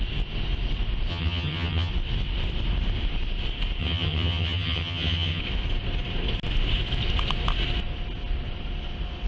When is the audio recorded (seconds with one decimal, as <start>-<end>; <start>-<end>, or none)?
0.0-1.1; 1.9-3.8; 5.4-9.3